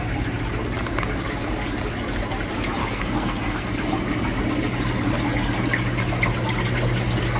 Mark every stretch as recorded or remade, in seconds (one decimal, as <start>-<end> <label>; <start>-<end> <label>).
0.0-2.8 recorded; 2.8-3.7 remade; 3.7-7.4 recorded